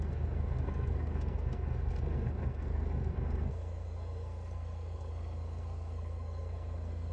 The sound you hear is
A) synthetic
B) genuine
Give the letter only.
A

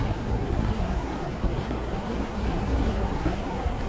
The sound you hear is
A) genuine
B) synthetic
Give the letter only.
B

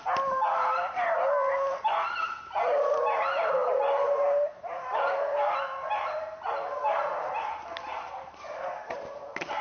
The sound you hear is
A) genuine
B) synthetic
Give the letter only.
A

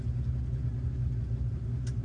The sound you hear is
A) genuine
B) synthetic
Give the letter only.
A